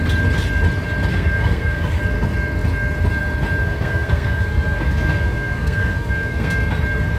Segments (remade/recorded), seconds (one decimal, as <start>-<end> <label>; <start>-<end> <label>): 0.0-1.1 recorded; 1.1-2.0 remade; 2.0-3.6 recorded; 3.6-6.7 remade; 6.7-7.2 recorded